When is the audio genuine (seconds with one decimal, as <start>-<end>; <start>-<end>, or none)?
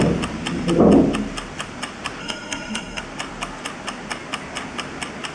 0.0-2.2; 3.0-5.3